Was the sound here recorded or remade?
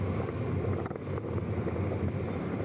recorded